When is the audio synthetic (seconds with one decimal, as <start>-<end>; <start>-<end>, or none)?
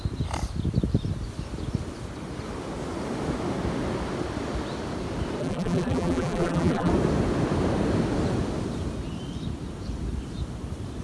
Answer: 5.4-6.9